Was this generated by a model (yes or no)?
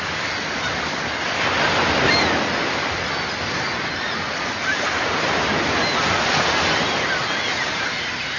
no